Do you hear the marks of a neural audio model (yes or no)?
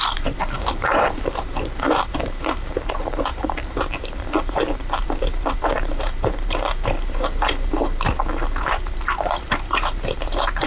yes